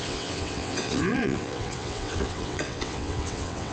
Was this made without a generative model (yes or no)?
no